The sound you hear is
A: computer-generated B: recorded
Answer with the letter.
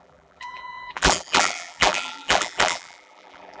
A